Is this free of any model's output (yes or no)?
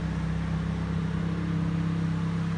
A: yes